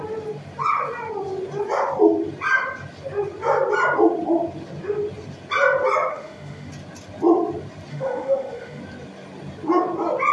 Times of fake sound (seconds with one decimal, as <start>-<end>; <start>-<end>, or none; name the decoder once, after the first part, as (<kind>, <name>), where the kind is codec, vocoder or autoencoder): 6.1-6.7 (autoencoder, DAC-VAE); 7.9-8.8